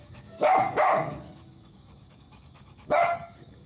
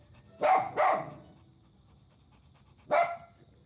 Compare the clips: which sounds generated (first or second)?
first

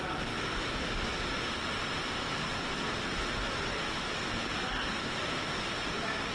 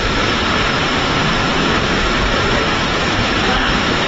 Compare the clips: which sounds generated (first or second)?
second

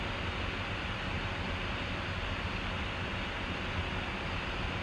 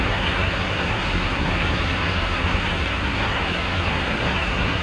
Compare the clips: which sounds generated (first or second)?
second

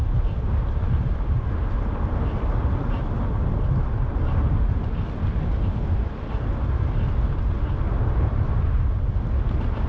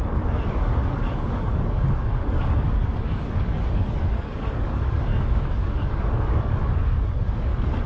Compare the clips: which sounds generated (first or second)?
second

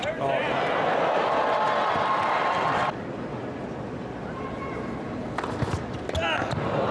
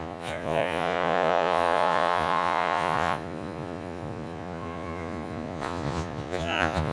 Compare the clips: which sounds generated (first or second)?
second